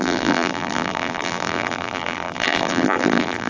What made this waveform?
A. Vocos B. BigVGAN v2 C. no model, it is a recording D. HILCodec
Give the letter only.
B